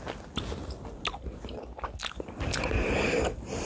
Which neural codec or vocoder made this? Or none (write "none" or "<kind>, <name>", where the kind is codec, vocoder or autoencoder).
none